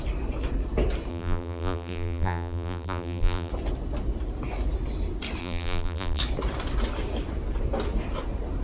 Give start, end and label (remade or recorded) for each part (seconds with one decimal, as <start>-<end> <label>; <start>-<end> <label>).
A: 0.0-1.1 recorded; 1.1-3.5 remade; 3.5-5.4 recorded; 5.4-6.2 remade; 6.2-8.6 recorded